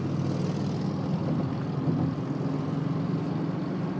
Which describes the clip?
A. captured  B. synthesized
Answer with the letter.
A